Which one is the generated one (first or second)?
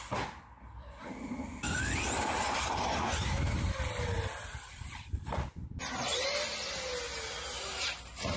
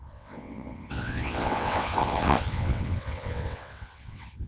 second